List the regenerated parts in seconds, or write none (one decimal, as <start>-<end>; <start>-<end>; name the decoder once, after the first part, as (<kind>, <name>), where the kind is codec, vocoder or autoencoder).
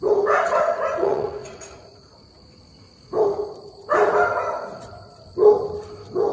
0.9-1.6 (vocoder, Vocos)